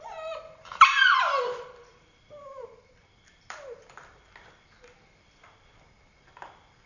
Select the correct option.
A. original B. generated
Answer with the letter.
B